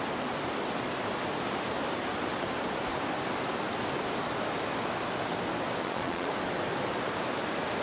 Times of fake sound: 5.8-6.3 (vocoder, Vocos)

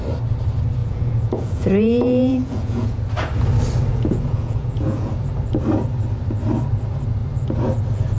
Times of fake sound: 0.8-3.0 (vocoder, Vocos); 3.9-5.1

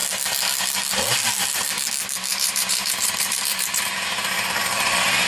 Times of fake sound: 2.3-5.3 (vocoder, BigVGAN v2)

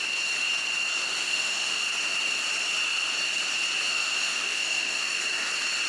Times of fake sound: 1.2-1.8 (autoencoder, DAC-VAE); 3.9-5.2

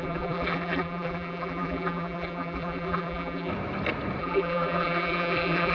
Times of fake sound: 0.0-3.5 (vocoder, BigVGAN v2); 4.2-5.7

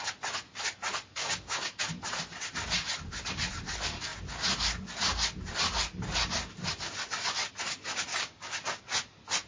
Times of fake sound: 1.2-1.8 (codec, DAC); 8.1-8.8

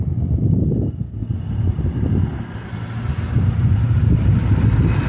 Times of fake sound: none

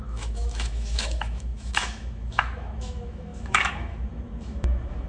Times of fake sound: 0.0-5.1 (autoencoder, DAC-VAE)